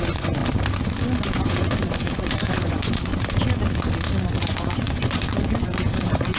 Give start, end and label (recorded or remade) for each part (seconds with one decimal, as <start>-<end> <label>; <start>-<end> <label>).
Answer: 0.0-0.4 remade; 0.4-1.3 recorded; 1.3-3.1 remade; 3.1-4.4 recorded; 4.4-6.4 remade